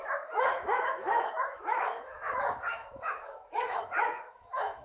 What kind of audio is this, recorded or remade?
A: remade